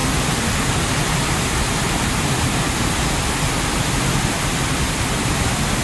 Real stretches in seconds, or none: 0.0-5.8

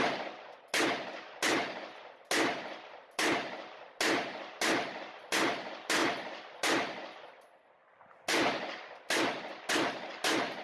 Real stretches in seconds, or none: 0.0-10.6